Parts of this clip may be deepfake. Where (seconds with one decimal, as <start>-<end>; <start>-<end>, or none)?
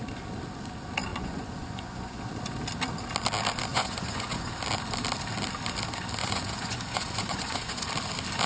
1.1-2.3; 3.7-4.5; 6.2-7.9